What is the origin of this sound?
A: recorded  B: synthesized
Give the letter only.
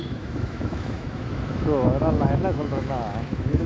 B